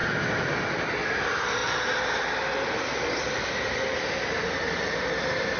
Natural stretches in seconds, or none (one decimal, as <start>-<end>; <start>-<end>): 0.0-5.6